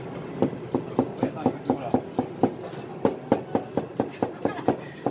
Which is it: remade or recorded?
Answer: recorded